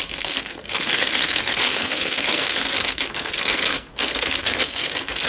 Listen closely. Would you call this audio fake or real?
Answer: fake